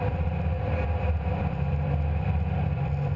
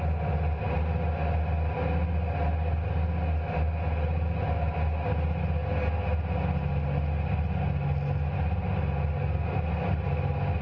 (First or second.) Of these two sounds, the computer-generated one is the first